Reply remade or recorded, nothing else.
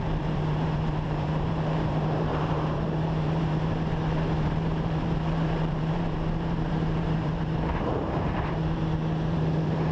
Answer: remade